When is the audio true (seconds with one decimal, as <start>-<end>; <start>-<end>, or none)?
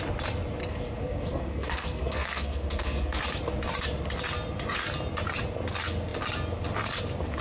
0.0-0.6; 3.2-7.4